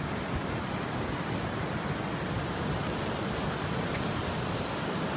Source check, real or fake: real